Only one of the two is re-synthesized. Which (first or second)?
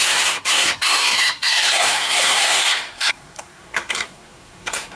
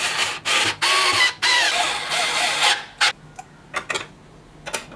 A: first